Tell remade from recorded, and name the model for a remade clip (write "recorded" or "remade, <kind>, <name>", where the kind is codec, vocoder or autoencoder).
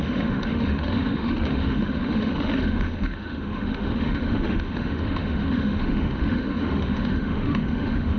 remade, autoencoder, DAC-VAE